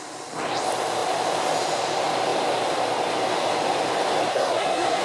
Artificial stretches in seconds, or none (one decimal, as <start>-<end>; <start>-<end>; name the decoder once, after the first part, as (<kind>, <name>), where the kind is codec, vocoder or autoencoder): 4.3-5.0 (codec, SNAC)